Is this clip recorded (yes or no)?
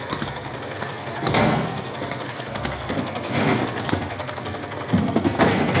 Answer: no